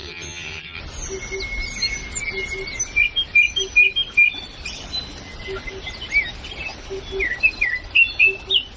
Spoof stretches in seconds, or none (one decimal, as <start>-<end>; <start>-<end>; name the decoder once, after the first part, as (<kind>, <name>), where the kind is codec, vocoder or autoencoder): 0.0-0.8 (vocoder, HiFi-GAN)